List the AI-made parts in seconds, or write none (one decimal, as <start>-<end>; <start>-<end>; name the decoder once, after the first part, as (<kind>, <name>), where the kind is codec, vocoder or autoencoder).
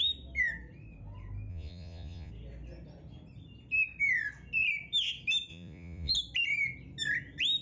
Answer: 1.5-2.3 (vocoder, Vocos); 5.5-6.1